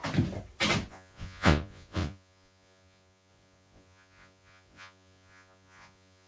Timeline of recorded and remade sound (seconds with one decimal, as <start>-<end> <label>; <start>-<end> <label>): 0.0-0.9 recorded; 0.9-6.3 remade